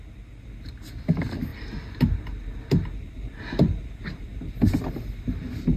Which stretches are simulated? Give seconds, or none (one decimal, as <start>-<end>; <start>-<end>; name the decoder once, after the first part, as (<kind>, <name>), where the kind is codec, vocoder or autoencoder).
none